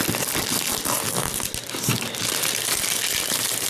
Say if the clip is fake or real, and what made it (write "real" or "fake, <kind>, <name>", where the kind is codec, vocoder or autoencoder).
real